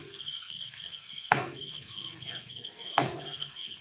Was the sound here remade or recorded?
remade